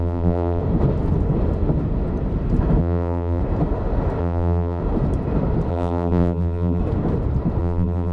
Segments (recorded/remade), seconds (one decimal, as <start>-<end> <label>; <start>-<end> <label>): 0.0-0.6 remade; 0.6-2.8 recorded; 2.8-3.4 remade; 3.4-4.2 recorded; 4.2-4.8 remade; 4.8-5.7 recorded; 5.7-6.8 remade; 6.8-7.6 recorded; 7.6-8.1 remade